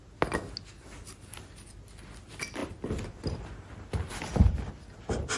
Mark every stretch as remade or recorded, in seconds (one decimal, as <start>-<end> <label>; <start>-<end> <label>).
0.0-1.3 recorded; 1.3-2.1 remade; 2.1-2.6 recorded; 2.6-4.7 remade; 4.7-5.4 recorded